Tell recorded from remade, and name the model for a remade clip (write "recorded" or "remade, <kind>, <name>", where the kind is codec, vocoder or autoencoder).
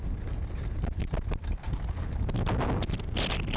recorded